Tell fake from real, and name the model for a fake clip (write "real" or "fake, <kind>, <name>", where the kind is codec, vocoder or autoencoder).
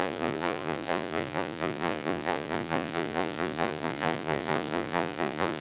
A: fake, vocoder, Vocos